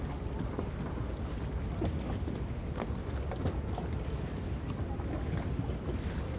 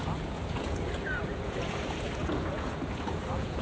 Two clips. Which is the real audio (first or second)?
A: first